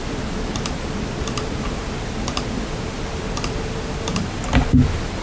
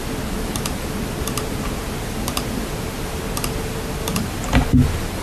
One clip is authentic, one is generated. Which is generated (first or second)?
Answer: first